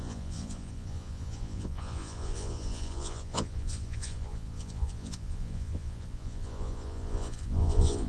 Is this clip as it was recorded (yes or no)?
no